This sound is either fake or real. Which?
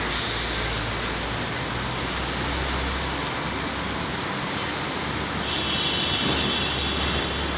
real